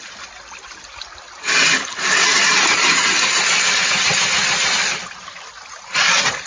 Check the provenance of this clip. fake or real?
real